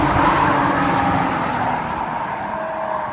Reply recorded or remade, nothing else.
recorded